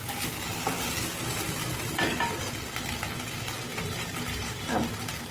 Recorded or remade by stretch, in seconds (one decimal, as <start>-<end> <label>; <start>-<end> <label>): 0.0-3.7 recorded; 3.7-4.6 remade; 4.6-5.3 recorded